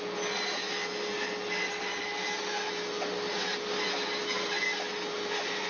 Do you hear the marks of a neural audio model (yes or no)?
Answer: no